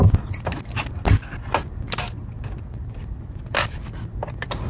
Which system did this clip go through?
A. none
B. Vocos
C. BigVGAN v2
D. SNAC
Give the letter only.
A